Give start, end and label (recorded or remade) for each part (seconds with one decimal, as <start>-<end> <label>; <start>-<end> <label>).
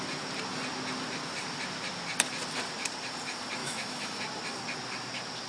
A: 0.0-3.6 recorded; 3.6-4.2 remade; 4.2-5.5 recorded